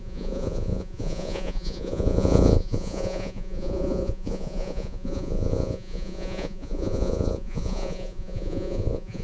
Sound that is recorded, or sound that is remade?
remade